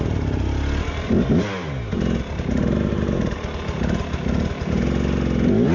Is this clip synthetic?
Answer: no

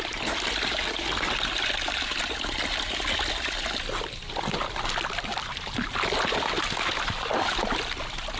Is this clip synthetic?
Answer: no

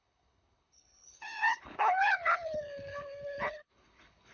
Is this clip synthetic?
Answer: yes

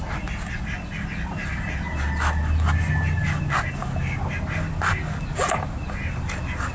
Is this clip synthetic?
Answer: no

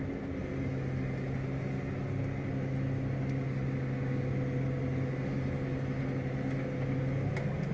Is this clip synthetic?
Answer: no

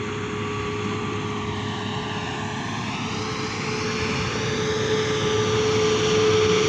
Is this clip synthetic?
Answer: no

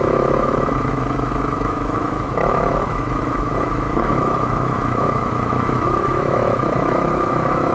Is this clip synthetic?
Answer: yes